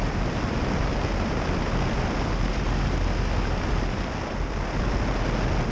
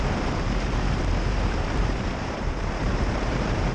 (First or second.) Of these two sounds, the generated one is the second